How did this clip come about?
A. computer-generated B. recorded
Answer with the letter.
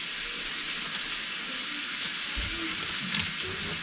B